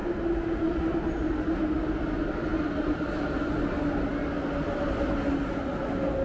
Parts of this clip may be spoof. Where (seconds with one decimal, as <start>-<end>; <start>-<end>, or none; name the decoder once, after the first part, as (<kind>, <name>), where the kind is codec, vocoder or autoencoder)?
none